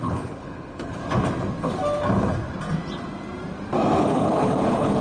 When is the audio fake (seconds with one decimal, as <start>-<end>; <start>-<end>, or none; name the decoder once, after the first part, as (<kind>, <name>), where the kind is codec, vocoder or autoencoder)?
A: 0.0-1.0 (codec, HILCodec); 4.0-5.0

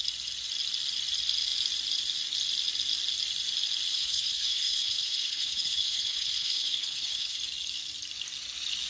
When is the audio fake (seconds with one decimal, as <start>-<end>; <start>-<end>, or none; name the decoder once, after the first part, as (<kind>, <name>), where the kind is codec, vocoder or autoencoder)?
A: 3.9-7.4 (codec, HILCodec)

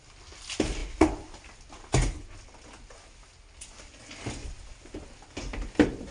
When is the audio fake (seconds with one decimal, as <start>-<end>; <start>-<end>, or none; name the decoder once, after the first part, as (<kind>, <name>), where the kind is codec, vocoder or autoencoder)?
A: none

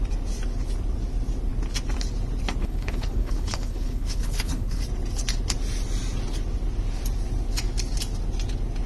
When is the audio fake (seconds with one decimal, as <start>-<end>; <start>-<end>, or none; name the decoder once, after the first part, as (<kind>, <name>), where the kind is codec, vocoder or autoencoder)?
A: 2.6-4.8 (codec, HILCodec)

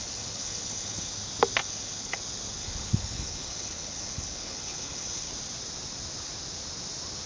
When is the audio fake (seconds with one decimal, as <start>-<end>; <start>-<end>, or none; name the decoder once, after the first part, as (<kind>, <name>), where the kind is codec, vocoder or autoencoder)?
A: 0.0-1.1 (codec, HILCodec); 1.6-2.2; 2.6-5.3